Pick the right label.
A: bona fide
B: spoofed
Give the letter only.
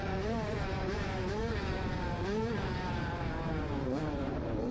B